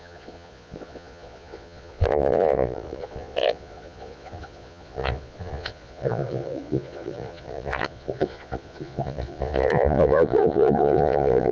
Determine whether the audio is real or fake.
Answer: fake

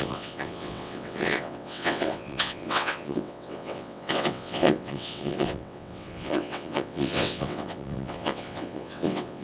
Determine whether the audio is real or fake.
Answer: fake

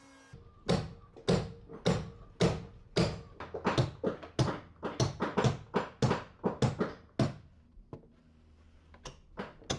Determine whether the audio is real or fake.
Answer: real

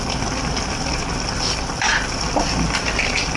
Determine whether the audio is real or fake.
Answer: real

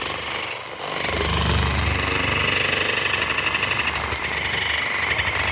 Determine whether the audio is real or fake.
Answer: real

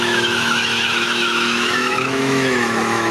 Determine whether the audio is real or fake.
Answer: fake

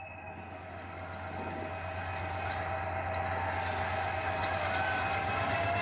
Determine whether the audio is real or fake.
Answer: real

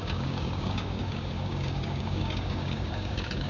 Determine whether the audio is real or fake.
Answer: fake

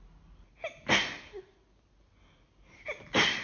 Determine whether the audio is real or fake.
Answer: real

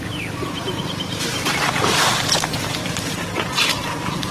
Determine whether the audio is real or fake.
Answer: fake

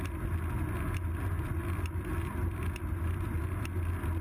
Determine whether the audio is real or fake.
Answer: real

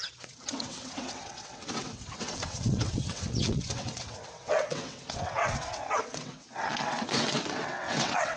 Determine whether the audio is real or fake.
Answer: fake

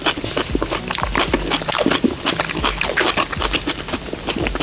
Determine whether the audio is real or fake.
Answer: real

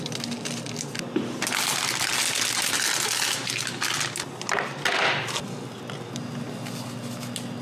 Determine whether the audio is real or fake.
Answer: real